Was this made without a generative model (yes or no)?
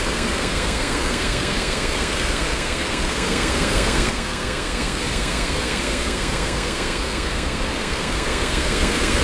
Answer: no